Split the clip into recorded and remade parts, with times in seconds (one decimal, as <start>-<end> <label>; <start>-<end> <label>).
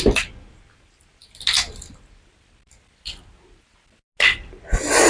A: 0.0-5.1 recorded